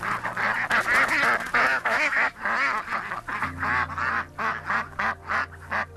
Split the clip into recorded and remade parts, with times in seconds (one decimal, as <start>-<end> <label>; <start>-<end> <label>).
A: 0.0-1.7 recorded; 1.7-2.4 remade; 2.4-6.0 recorded